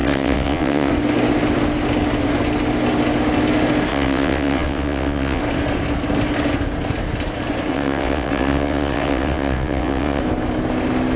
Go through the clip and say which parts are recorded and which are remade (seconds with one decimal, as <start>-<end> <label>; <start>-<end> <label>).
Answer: 0.0-0.9 remade; 0.9-3.9 recorded; 3.9-5.4 remade; 5.4-7.7 recorded; 7.7-10.2 remade; 10.2-11.2 recorded